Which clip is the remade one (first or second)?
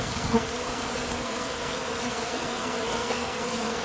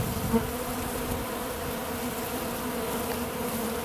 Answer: first